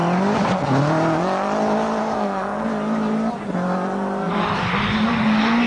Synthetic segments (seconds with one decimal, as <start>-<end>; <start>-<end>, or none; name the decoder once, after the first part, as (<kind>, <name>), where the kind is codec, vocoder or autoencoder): 2.0-2.7 (codec, SNAC)